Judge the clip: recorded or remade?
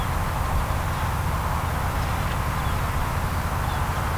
recorded